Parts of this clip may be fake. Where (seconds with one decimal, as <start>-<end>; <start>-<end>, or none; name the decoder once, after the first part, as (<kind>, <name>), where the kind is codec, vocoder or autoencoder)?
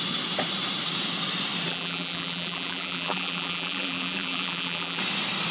1.7-5.0 (vocoder, BigVGAN v2)